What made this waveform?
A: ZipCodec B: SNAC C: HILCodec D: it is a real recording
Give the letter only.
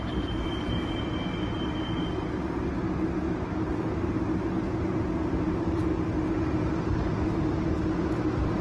D